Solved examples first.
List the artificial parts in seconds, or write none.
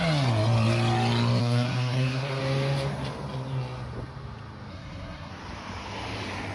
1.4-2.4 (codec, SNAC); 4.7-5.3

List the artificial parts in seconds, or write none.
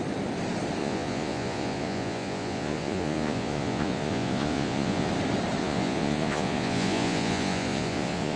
0.8-5.1 (vocoder, Vocos); 5.6-8.4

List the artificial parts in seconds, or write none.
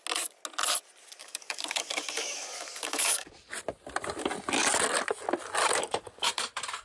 1.2-3.3 (codec, DAC); 5.6-6.3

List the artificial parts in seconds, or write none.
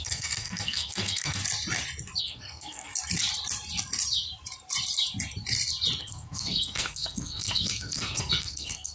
0.0-1.4 (codec, SNAC); 2.2-2.9; 6.0-8.9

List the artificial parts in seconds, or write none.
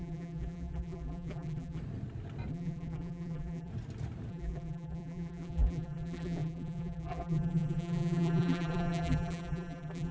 0.0-1.8 (vocoder, BigVGAN v2); 2.5-3.7; 4.3-10.1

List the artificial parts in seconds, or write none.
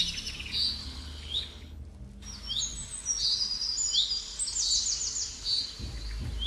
0.8-1.8 (codec, HILCodec)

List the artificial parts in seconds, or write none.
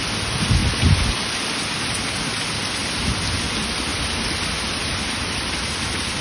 none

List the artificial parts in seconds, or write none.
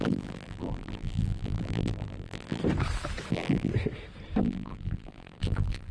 0.0-2.6 (vocoder, BigVGAN v2); 3.3-3.7; 4.4-5.9